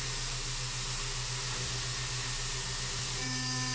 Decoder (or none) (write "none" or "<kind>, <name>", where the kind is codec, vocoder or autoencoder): none